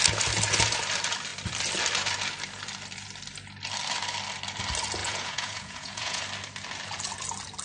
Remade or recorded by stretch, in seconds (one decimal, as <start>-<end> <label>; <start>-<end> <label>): 0.0-5.0 recorded; 5.0-6.2 remade; 6.2-7.6 recorded